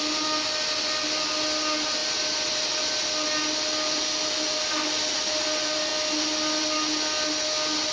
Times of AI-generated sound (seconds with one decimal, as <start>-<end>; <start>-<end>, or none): none